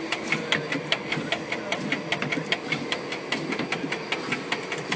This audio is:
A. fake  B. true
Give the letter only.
B